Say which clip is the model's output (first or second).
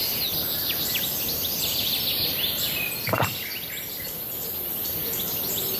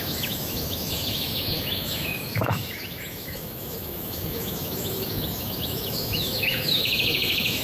second